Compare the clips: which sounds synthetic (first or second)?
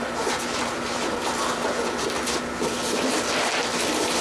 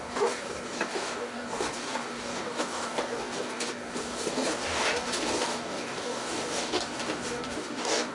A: second